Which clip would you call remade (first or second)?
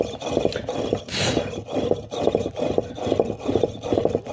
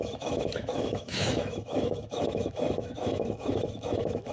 second